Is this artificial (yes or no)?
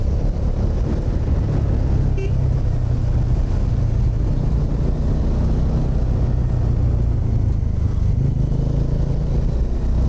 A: no